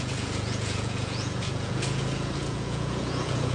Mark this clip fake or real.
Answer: fake